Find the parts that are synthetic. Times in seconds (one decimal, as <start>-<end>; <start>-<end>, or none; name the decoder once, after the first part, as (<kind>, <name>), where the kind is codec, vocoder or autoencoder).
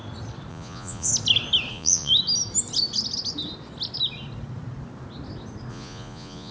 0.5-1.1 (vocoder, Vocos); 1.7-2.1; 5.7-6.5